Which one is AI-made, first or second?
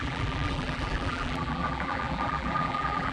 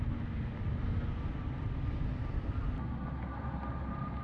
first